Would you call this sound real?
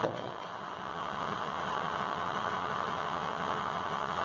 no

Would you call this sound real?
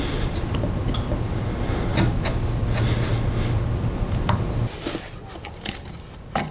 yes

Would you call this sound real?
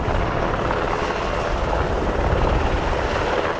yes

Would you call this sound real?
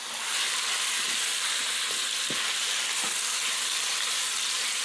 yes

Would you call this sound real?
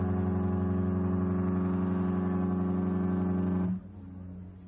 yes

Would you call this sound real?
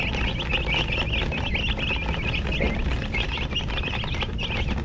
yes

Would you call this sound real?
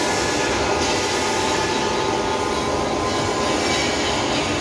yes